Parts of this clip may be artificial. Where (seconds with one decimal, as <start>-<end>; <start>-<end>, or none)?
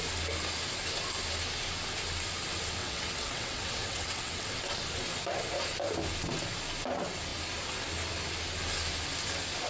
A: 2.8-4.6